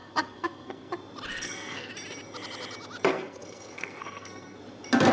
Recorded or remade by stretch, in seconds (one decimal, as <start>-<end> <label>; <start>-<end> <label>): 0.0-0.9 remade; 0.9-1.3 recorded; 1.3-1.9 remade; 1.9-3.1 recorded; 3.1-4.6 remade; 4.6-5.1 recorded